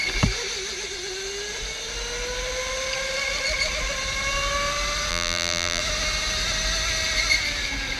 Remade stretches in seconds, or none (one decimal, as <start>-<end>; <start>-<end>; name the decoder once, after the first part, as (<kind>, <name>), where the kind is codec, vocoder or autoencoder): 5.1-5.8 (vocoder, BigVGAN v2)